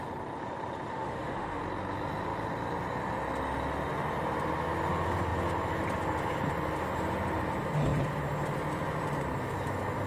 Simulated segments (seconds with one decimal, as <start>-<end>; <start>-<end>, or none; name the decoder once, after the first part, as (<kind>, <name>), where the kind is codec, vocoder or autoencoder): 0.9-1.6 (autoencoder, DAC-VAE)

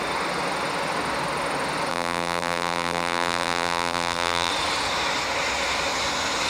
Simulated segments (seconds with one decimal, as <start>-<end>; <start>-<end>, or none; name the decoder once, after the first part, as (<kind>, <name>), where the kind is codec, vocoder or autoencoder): 1.9-4.5 (vocoder, BigVGAN v2)

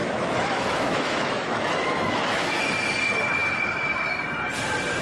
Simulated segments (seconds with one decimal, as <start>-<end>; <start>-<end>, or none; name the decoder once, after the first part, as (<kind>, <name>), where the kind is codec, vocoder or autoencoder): 0.0-2.6 (autoencoder, DAC-VAE)

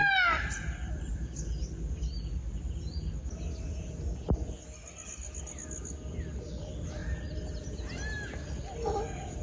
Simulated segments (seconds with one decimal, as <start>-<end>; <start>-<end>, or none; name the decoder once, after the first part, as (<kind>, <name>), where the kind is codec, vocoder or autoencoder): none